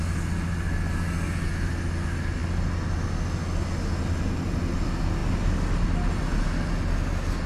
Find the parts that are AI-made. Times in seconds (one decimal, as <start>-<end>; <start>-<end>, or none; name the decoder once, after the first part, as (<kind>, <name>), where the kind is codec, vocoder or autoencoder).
none